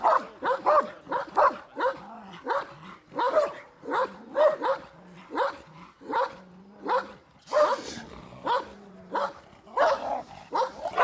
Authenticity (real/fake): real